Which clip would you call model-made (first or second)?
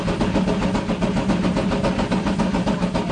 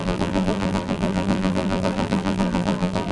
second